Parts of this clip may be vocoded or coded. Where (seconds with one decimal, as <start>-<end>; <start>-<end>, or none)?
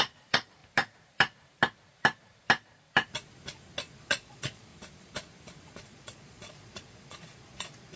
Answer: 0.0-0.6; 4.0-4.7; 5.7-8.0